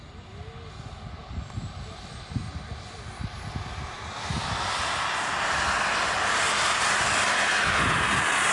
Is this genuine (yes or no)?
yes